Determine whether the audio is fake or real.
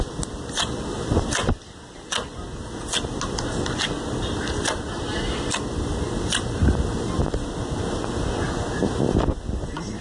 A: real